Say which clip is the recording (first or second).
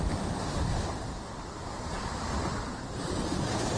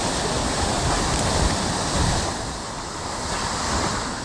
first